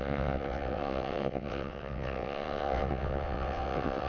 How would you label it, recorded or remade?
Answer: remade